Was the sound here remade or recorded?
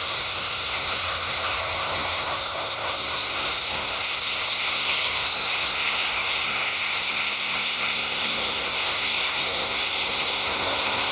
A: remade